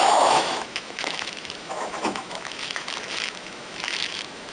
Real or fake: fake